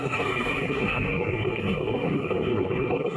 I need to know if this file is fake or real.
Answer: fake